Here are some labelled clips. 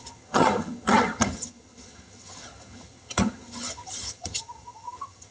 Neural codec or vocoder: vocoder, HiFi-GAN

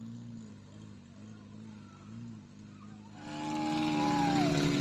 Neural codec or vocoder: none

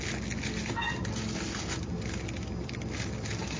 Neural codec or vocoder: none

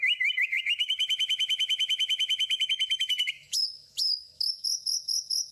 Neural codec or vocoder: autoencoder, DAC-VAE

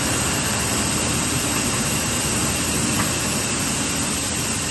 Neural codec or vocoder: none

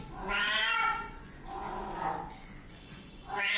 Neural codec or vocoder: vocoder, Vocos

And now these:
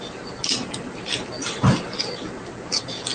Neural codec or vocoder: none